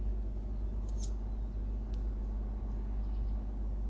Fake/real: real